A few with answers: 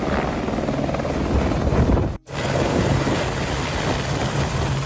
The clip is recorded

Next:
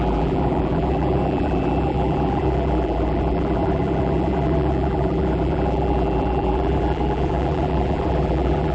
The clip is remade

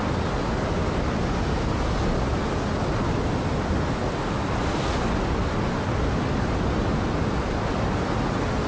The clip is recorded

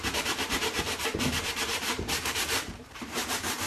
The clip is remade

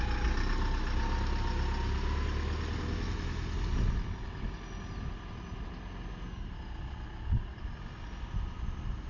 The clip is recorded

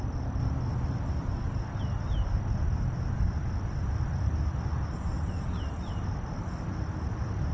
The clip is recorded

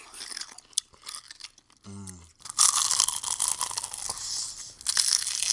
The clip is recorded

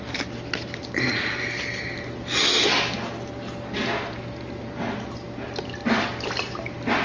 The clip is recorded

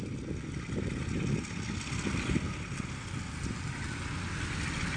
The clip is recorded